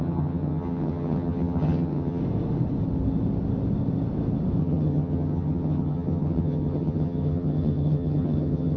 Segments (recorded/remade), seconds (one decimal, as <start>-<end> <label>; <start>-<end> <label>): 0.0-2.2 remade; 2.2-4.6 recorded; 4.6-8.8 remade